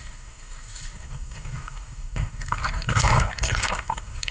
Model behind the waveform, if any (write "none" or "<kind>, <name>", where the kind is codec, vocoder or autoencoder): codec, DAC